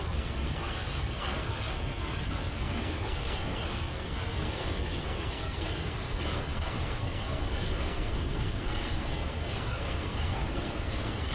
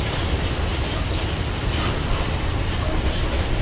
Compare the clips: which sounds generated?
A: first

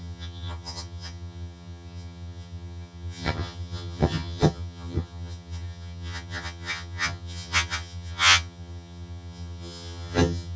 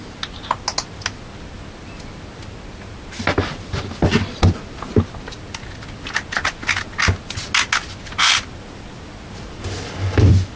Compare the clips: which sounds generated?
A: first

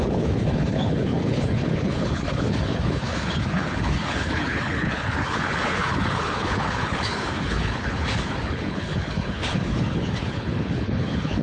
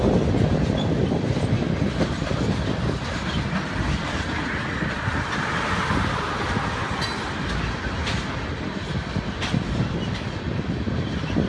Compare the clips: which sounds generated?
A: first